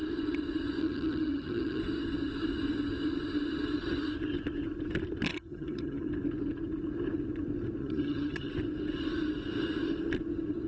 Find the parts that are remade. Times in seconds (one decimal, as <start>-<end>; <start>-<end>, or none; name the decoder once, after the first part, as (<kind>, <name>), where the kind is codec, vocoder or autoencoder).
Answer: 0.8-1.8 (vocoder, HiFi-GAN); 5.3-6.1; 7.8-8.5